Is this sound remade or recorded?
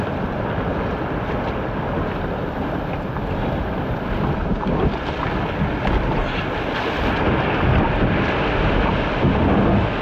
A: recorded